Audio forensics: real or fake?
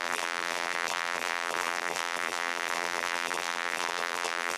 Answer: fake